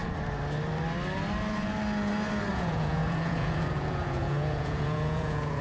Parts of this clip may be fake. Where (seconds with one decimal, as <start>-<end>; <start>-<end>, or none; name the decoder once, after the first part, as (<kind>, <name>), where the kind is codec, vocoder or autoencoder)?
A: 2.5-5.6 (vocoder, Vocos)